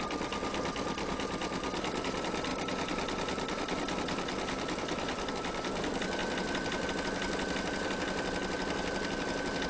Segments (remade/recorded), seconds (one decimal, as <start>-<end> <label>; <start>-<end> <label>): 0.0-2.5 recorded; 2.5-5.3 remade; 5.3-6.2 recorded; 6.2-6.9 remade; 6.9-9.7 recorded